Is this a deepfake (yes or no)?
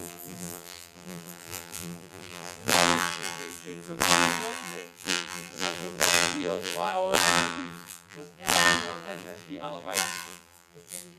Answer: yes